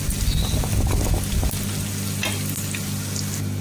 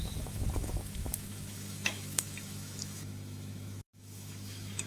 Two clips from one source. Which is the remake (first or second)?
second